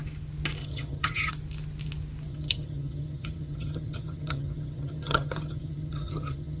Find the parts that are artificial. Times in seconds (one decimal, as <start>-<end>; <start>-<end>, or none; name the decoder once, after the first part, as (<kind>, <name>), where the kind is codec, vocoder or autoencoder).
0.6-1.3 (vocoder, HiFi-GAN); 2.3-6.6